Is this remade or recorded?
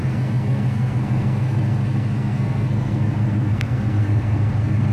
remade